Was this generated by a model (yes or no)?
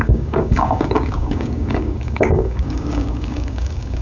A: yes